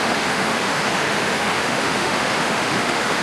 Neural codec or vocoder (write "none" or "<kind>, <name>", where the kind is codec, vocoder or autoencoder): autoencoder, DAC-VAE